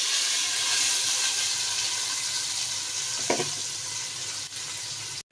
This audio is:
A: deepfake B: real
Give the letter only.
B